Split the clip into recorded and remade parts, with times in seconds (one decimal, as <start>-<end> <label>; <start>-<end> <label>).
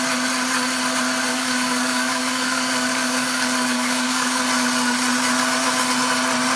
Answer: 0.0-1.3 recorded; 1.3-4.4 remade; 4.4-6.6 recorded